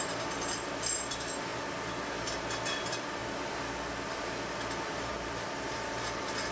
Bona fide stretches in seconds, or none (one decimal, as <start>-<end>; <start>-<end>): 1.5-2.2; 3.2-4.8

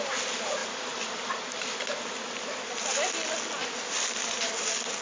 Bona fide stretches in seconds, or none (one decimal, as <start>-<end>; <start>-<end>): 0.0-5.0

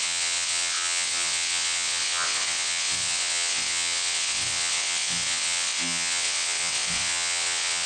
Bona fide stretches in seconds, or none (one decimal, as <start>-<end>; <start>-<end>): none

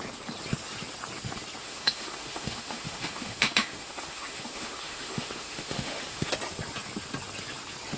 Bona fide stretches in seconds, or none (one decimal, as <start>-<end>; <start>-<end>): 0.0-1.6; 6.3-8.0

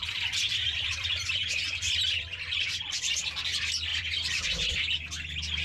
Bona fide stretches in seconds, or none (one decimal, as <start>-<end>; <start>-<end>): 0.0-3.9; 4.7-5.6

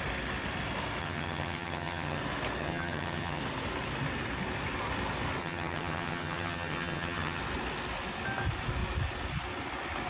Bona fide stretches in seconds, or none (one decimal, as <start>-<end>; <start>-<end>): 0.0-1.0; 2.2-2.6; 3.4-5.4; 7.4-10.1

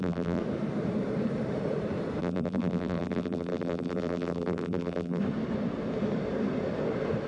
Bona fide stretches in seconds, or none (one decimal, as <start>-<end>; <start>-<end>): 0.4-2.2; 5.2-7.3

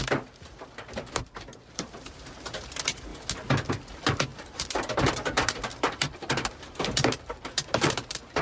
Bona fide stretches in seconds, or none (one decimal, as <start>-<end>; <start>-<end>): 3.1-3.7